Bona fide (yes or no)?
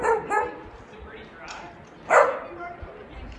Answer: yes